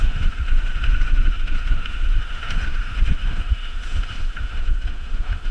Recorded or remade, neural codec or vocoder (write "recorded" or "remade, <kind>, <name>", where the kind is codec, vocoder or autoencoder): remade, autoencoder, DAC-VAE